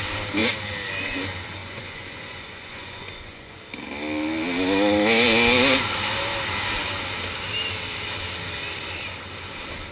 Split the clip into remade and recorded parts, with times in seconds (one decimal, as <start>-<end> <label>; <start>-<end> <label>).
0.0-1.6 recorded; 1.6-3.6 remade; 3.6-9.9 recorded